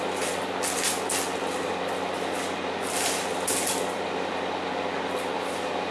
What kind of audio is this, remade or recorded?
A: recorded